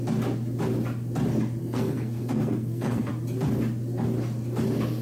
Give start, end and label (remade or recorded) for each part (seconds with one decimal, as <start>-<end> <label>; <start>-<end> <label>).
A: 0.0-1.6 recorded; 1.6-3.1 remade; 3.1-5.0 recorded